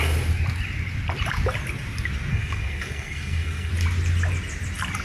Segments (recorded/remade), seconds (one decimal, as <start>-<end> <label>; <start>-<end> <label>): 0.0-2.3 recorded; 2.3-3.7 remade; 3.7-5.0 recorded